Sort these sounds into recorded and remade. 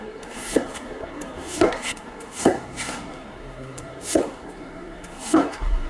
remade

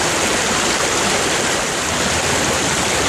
recorded